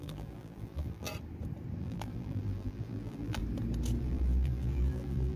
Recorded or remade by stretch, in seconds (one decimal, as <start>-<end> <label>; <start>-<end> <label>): 0.0-1.1 remade; 1.1-1.8 recorded; 1.8-3.4 remade; 3.4-4.0 recorded; 4.0-5.4 remade